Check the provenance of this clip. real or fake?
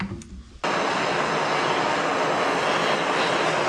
real